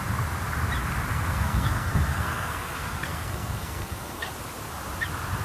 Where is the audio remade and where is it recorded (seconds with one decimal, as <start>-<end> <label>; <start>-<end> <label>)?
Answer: 0.0-1.1 recorded; 1.1-4.3 remade; 4.3-5.4 recorded